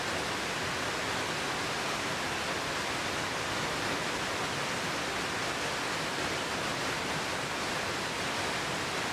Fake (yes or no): no